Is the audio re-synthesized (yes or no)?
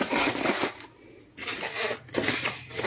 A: no